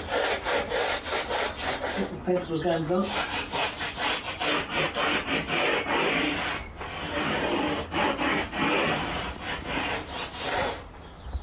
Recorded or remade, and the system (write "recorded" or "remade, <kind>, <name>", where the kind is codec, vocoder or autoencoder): recorded